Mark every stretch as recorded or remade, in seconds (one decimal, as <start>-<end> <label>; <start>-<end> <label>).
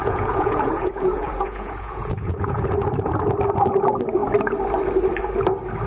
0.0-3.3 remade; 3.3-5.9 recorded